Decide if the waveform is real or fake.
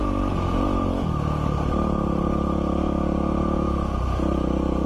real